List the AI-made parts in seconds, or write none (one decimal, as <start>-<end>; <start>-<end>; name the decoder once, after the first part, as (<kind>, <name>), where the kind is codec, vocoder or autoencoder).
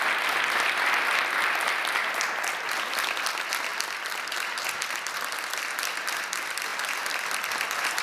none